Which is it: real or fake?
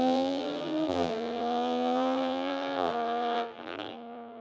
fake